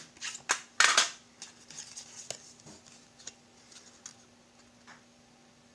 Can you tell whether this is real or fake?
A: real